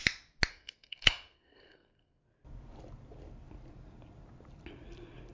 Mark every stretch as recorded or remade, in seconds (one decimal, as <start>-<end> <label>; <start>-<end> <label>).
0.0-0.5 recorded; 0.5-2.2 remade; 2.2-5.3 recorded

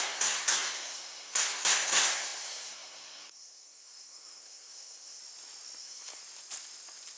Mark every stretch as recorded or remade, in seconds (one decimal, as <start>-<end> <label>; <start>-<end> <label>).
0.0-5.2 remade; 5.2-5.8 recorded; 5.8-6.2 remade; 6.2-7.2 recorded

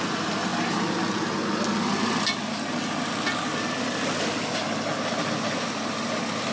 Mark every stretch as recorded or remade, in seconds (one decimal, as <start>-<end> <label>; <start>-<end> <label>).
0.0-6.5 recorded